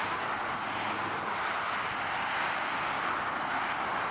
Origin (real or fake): real